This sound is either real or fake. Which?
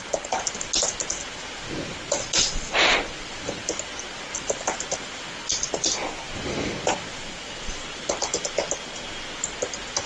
real